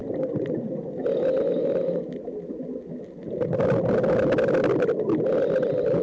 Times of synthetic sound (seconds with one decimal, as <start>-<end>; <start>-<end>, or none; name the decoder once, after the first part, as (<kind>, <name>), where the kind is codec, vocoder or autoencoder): 0.0-1.0 (vocoder, BigVGAN v2)

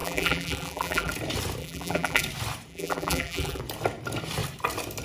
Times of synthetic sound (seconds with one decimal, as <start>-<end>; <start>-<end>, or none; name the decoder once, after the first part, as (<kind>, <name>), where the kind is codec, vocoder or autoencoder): 0.0-1.1 (vocoder, BigVGAN v2); 1.6-2.2; 2.7-3.6

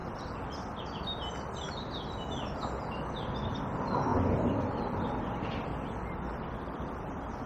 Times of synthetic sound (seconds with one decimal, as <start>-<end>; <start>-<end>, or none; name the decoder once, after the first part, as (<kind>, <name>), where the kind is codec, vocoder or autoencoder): none

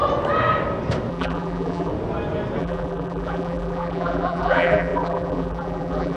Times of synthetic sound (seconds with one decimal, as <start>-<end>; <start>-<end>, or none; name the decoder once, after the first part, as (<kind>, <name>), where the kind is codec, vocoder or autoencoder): 1.1-1.9 (vocoder, BigVGAN v2); 2.6-6.2

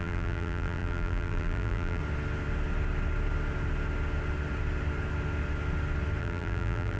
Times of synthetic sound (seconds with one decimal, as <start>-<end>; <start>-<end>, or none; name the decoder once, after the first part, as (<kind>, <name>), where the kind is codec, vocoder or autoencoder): 0.0-2.0 (vocoder, BigVGAN v2); 6.2-7.0

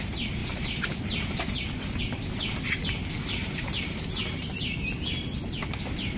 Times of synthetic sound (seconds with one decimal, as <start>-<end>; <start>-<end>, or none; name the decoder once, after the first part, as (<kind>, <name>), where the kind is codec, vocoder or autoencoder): 0.4-2.0 (vocoder, BigVGAN v2); 3.4-4.0

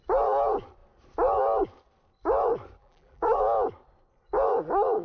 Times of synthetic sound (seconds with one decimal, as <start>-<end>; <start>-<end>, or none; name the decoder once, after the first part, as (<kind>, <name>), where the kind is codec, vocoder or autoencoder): 2.8-3.4 (vocoder, BigVGAN v2)

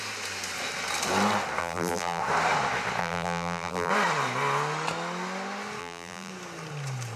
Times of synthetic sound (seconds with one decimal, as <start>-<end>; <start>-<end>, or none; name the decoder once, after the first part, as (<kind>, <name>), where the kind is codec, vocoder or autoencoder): 1.6-2.2 (vocoder, BigVGAN v2); 3.0-3.9; 5.8-6.3